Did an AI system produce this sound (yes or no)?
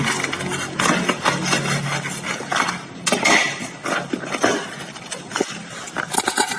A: no